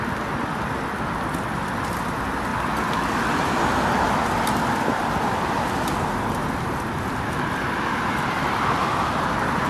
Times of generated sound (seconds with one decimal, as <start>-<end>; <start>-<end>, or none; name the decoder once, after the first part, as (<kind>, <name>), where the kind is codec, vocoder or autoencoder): none